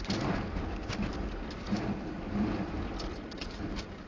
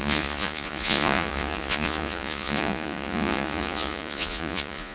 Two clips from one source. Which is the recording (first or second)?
first